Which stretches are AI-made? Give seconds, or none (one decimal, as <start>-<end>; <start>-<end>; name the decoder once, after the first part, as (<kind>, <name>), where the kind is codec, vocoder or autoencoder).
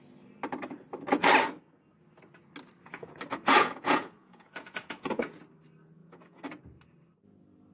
2.8-5.4 (vocoder, Vocos); 6.0-6.6